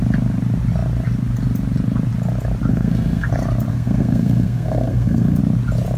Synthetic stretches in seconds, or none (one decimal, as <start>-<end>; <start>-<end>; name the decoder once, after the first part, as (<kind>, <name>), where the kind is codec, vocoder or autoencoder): 2.7-3.3 (codec, SNAC); 3.7-5.4